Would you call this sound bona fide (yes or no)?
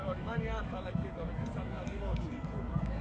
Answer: no